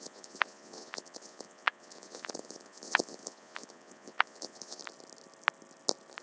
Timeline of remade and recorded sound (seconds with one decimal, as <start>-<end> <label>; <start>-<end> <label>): 0.0-4.8 remade; 4.8-6.2 recorded